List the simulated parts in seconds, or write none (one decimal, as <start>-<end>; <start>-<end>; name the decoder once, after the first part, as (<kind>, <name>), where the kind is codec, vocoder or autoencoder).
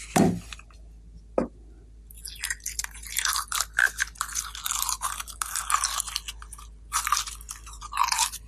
none